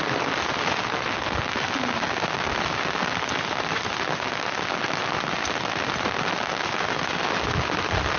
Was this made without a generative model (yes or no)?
yes